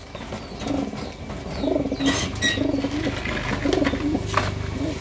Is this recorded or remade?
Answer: recorded